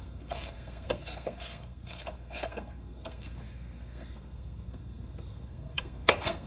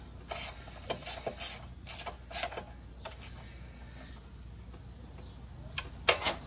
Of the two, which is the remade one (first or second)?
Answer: first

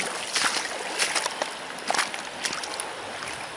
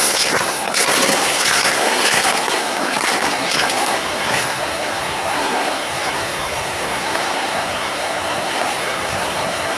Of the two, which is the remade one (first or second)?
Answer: second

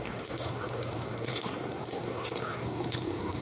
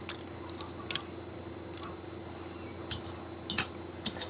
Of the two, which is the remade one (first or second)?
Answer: first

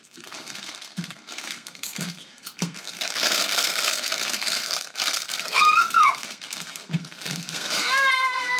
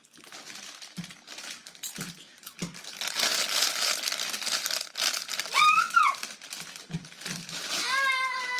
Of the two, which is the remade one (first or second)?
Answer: first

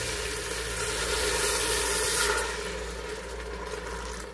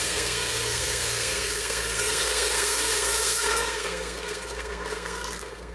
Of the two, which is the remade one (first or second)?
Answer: second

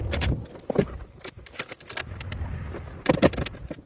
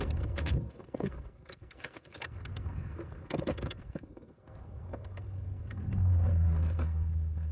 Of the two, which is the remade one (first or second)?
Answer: second